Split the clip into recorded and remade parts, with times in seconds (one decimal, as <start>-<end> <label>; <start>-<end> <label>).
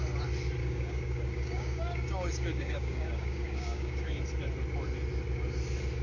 0.0-0.6 recorded; 0.6-4.2 remade; 4.2-6.0 recorded